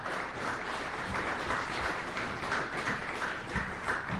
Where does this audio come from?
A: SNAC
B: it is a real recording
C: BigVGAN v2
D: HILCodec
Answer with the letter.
C